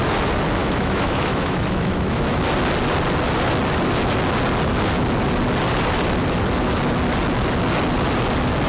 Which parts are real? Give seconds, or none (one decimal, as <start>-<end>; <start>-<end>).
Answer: 0.0-0.6; 2.4-8.7